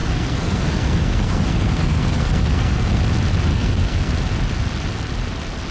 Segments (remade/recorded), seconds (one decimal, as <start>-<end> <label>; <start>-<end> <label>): 0.0-3.0 remade; 3.0-3.5 recorded; 3.5-4.1 remade; 4.1-5.7 recorded